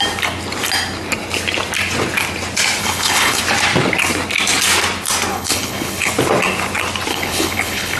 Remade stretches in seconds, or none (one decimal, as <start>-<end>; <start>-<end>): 2.8-3.4; 5.3-6.1; 7.1-8.0